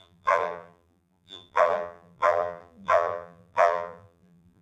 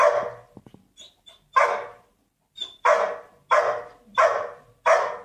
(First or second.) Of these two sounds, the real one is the second